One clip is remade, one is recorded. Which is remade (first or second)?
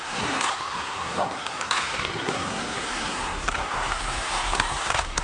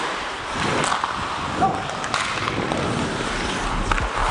first